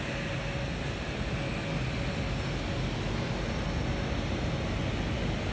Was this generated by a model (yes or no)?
no